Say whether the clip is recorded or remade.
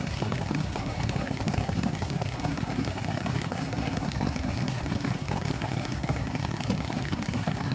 remade